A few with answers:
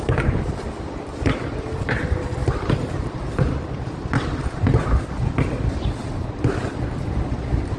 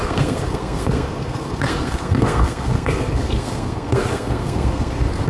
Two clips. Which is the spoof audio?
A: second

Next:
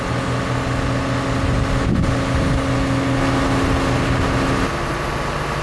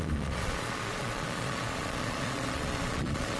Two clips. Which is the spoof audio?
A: second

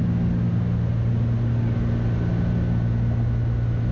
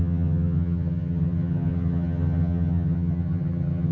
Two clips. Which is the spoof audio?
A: second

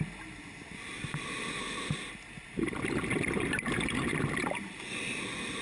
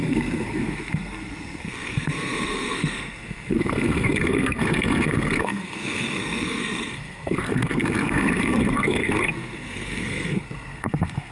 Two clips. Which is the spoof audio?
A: second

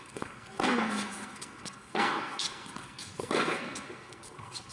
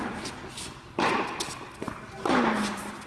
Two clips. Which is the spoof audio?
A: first